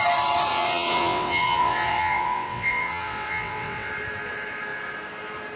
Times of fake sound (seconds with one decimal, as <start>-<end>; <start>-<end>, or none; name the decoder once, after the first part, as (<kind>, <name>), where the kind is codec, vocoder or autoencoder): 0.5-3.9 (vocoder, WaveNeXt)